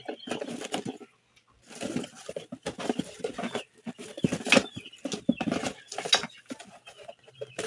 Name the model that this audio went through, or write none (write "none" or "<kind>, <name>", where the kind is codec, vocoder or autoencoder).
none